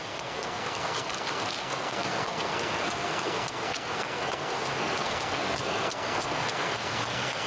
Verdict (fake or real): fake